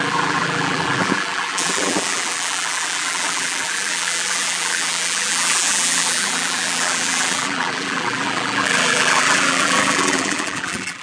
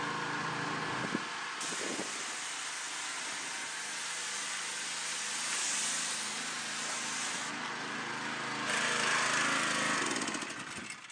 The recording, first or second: second